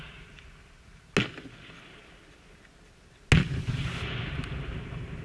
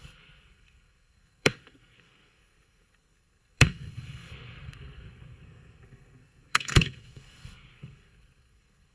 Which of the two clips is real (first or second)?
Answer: first